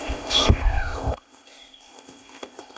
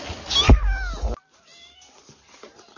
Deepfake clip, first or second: first